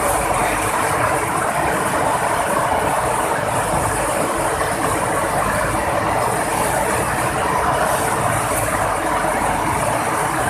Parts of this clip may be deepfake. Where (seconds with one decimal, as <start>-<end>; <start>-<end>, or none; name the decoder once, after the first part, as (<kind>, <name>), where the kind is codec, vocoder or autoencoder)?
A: 0.4-5.3 (vocoder, BigVGAN v2); 6.5-7.0